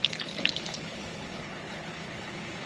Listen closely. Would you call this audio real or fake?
fake